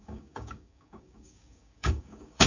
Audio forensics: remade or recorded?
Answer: remade